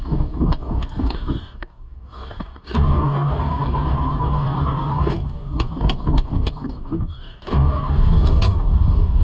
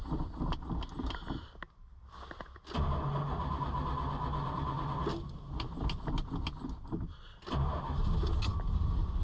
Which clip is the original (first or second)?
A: second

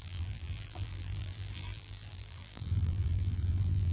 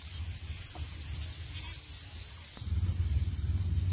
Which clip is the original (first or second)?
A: second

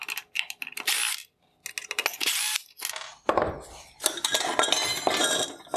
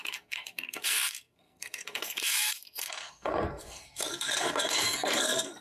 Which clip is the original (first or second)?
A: first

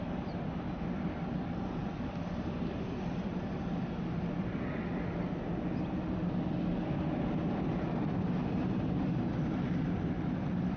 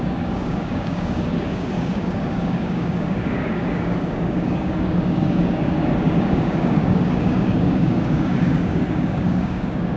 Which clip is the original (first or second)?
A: first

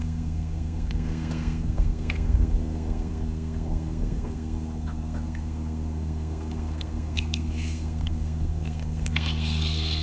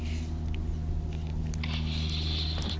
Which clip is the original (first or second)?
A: second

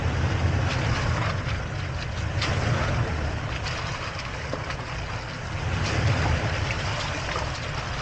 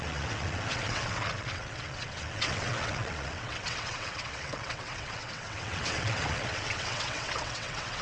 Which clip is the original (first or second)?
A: first